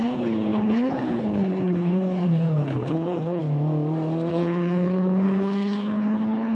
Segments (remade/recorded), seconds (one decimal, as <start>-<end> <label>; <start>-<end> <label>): 0.0-3.4 remade; 3.4-4.3 recorded; 4.3-6.5 remade